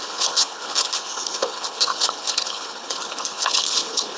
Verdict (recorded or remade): remade